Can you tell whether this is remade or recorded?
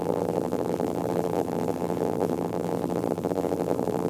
remade